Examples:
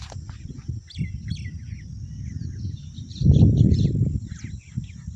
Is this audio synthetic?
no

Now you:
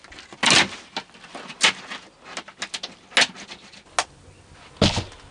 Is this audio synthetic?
no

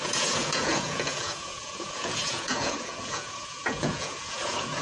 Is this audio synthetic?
yes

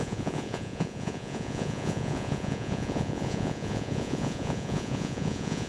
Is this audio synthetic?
yes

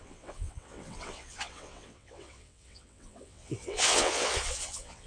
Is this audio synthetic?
yes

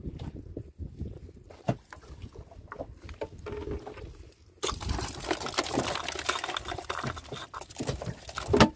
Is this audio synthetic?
no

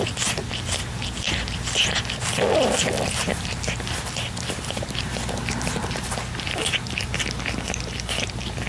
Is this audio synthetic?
no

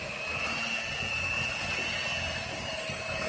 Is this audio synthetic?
no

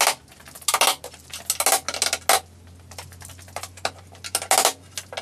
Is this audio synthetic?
no